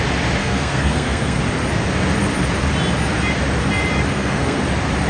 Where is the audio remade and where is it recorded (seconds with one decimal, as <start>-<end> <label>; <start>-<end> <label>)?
0.0-0.4 recorded; 0.4-1.4 remade; 1.4-4.1 recorded; 4.1-4.6 remade; 4.6-5.1 recorded